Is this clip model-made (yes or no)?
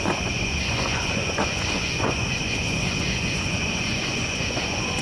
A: yes